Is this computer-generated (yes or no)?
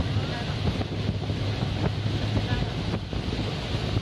no